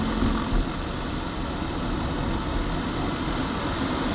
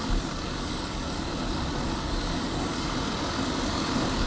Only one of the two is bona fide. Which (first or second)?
first